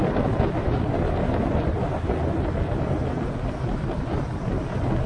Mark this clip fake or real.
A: real